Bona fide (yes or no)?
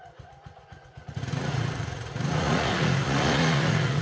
no